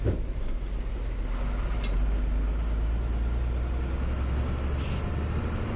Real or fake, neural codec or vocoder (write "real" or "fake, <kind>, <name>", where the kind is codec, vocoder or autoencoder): real